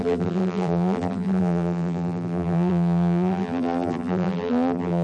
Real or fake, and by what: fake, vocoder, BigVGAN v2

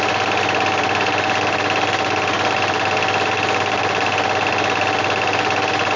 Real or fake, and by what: real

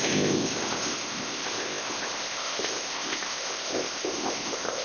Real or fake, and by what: fake, codec, ZipCodec